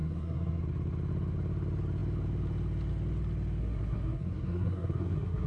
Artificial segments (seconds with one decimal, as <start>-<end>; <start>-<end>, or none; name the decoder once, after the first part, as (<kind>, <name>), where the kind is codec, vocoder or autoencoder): 0.0-0.6 (codec, SNAC); 3.6-5.5